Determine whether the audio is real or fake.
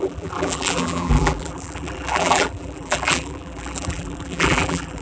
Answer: fake